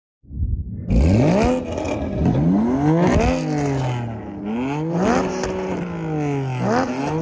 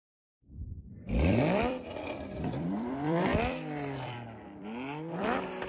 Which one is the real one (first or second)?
first